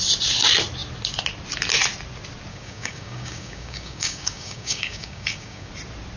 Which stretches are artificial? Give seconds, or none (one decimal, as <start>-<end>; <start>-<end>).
2.5-5.7